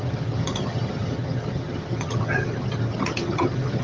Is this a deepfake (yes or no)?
yes